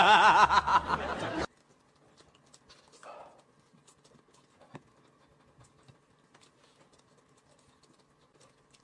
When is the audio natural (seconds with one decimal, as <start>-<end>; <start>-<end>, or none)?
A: 0.0-0.7; 2.6-8.8